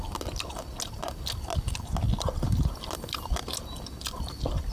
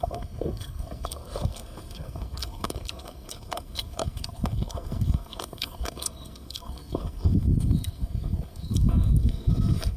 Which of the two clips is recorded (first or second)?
first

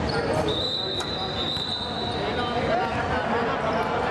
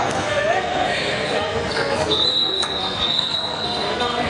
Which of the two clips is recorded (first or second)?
first